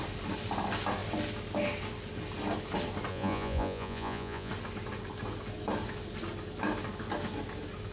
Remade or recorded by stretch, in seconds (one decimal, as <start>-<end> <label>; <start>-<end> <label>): 0.0-3.1 recorded; 3.1-4.5 remade; 4.5-7.9 recorded